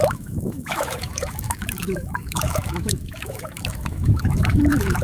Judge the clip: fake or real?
fake